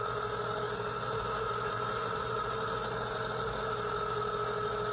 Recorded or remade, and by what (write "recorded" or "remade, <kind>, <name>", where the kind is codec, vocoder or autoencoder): recorded